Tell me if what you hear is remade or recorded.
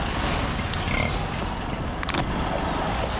recorded